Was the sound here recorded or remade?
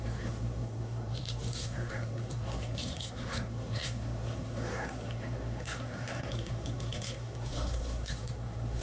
remade